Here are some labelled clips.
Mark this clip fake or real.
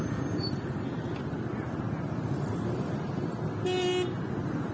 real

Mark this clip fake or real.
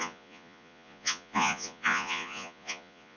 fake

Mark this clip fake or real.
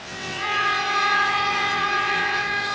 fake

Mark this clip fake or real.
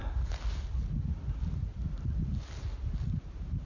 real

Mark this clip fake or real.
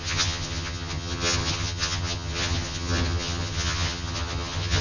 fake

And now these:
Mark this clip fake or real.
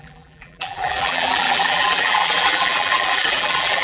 fake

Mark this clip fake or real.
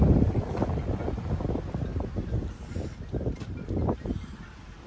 real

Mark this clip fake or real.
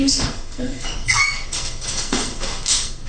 fake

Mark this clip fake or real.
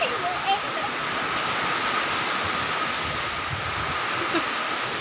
real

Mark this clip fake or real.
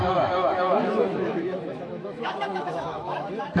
fake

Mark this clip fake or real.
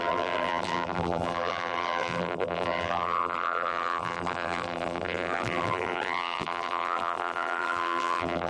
fake